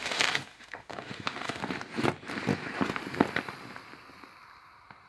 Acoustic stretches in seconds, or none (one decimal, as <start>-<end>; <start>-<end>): 1.6-5.1